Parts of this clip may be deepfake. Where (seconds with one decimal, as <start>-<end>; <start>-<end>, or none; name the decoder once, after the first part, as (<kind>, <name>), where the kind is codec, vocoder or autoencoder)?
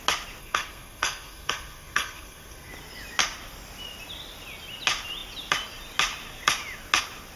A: 0.4-2.7 (codec, SNAC)